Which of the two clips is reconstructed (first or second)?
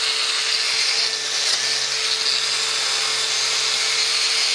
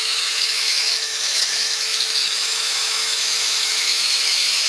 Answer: second